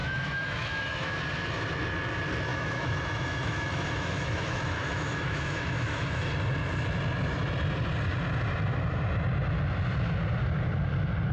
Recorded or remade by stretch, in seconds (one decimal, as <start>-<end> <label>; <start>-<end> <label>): 0.0-1.2 remade; 1.2-2.5 recorded; 2.5-6.3 remade; 6.3-11.3 recorded